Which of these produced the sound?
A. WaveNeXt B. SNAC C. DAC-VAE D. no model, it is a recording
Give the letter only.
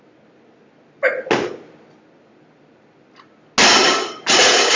D